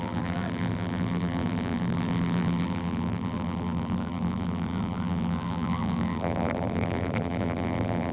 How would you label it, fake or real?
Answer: fake